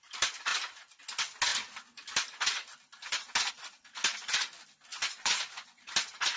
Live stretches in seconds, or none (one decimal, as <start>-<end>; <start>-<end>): 0.0-4.9; 5.8-6.4